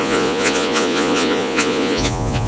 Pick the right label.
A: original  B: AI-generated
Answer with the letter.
B